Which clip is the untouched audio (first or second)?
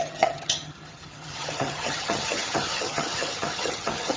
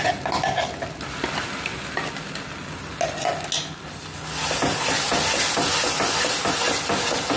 second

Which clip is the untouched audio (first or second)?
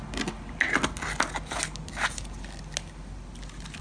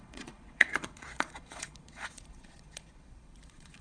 first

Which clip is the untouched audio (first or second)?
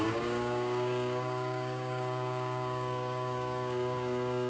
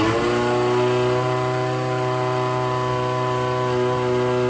second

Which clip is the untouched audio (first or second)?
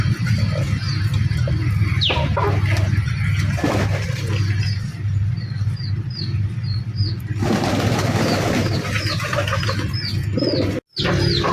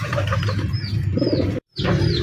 first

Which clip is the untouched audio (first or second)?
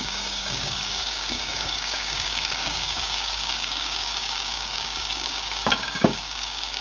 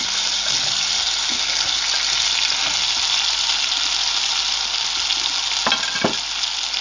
second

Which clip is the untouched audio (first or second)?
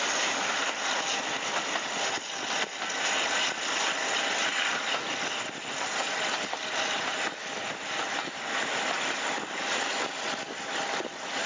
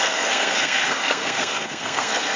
first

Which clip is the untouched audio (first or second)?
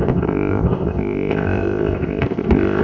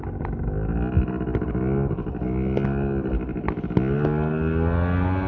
second